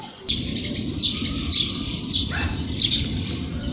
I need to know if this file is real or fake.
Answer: fake